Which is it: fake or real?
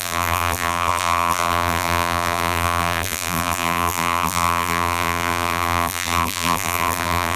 fake